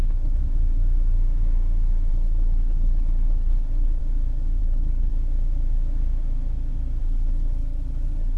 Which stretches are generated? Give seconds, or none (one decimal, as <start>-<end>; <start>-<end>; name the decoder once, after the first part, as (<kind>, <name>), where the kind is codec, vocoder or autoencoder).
0.0-0.4 (codec, HILCodec); 2.1-4.0; 4.6-5.1; 7.0-8.4